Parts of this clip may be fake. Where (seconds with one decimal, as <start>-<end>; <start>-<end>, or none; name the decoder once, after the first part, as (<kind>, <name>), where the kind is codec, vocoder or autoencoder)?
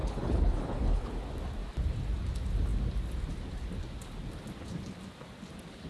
0.0-1.2 (codec, HILCodec)